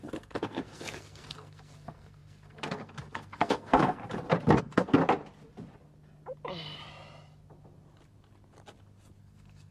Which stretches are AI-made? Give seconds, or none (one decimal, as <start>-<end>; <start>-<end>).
0.0-4.0; 4.6-5.0; 9.2-9.7